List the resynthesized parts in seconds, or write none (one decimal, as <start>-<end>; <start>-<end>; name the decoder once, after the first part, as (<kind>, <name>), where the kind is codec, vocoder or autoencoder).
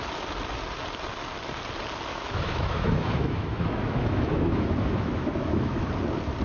2.1-5.9 (autoencoder, DAC-VAE)